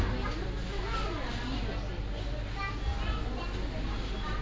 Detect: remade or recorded recorded